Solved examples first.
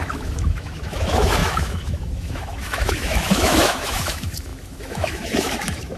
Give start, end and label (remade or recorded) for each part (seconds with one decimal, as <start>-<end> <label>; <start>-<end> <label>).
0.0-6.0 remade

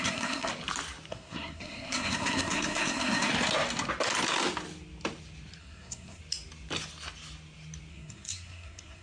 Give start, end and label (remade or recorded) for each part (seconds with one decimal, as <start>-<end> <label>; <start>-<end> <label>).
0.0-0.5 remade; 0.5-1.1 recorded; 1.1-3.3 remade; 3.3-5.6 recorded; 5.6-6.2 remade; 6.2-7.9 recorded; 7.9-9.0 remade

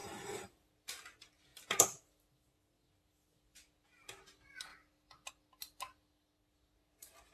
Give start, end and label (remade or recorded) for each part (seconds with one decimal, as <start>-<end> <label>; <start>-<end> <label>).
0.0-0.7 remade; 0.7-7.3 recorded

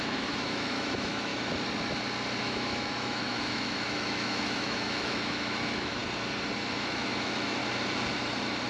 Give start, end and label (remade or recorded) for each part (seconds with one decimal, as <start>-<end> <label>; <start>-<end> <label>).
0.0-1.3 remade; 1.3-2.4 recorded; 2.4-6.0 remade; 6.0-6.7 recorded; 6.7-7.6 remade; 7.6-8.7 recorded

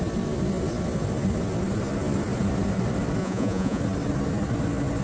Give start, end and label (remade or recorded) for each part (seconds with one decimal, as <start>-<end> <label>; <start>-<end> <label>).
0.0-3.2 recorded; 3.2-3.8 remade; 3.8-5.0 recorded